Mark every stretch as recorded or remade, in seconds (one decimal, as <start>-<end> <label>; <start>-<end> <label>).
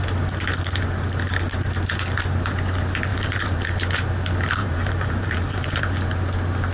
0.0-3.1 recorded; 3.1-3.7 remade; 3.7-4.6 recorded; 4.6-5.9 remade; 5.9-6.7 recorded